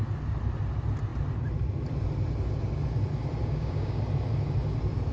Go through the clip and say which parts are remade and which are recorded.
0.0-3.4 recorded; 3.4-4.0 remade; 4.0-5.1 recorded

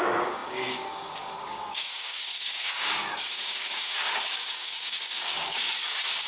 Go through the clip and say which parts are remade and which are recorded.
0.0-6.3 remade